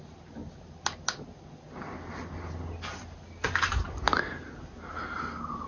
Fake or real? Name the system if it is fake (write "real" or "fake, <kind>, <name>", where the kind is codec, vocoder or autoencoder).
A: real